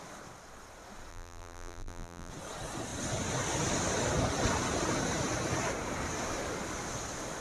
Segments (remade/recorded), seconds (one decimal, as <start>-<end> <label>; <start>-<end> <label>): 0.0-1.1 recorded; 1.1-2.3 remade; 2.3-7.4 recorded